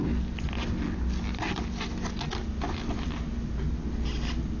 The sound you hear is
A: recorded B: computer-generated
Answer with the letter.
A